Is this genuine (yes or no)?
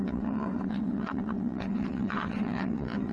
no